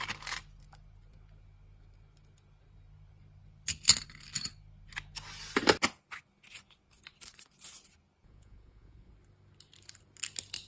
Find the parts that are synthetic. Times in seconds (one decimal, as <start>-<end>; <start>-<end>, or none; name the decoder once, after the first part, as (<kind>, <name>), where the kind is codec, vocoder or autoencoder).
8.2-9.1 (vocoder, Vocos)